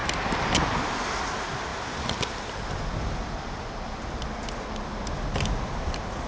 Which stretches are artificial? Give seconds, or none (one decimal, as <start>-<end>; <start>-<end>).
none